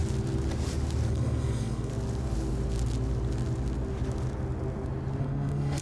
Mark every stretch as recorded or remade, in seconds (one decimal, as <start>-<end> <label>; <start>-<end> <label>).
0.0-1.1 recorded; 1.1-1.9 remade; 1.9-5.2 recorded; 5.2-5.8 remade